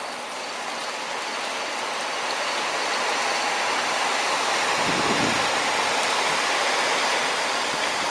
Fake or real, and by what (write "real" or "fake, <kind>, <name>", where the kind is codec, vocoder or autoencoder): real